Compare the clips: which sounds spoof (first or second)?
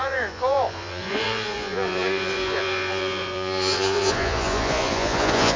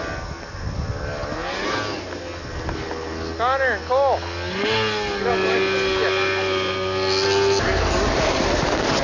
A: first